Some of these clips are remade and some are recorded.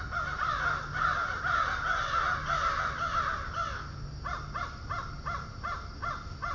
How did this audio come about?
recorded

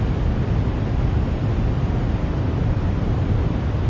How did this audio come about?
recorded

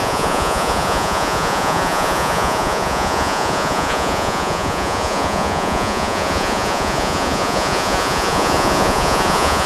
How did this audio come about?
remade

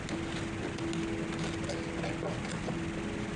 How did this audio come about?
recorded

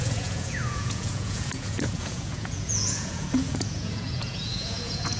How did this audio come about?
remade